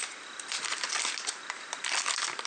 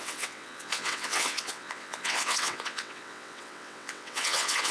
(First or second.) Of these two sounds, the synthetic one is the second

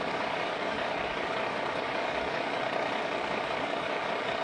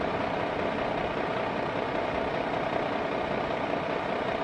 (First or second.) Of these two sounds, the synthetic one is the first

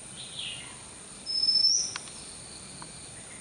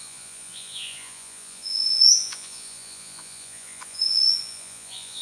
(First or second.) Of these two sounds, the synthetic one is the second